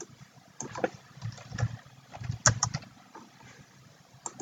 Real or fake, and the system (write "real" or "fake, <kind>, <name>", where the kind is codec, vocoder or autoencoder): real